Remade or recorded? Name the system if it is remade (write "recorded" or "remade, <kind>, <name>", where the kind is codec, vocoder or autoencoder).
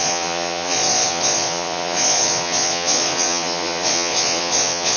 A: remade, vocoder, Vocos